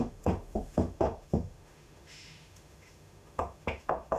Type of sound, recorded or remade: remade